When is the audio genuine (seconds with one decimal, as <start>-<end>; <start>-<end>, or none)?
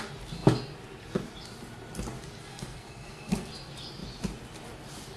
0.0-2.5; 3.5-5.2